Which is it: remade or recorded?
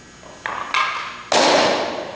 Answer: recorded